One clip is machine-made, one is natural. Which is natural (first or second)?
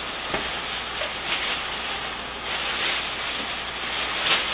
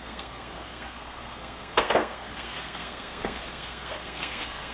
first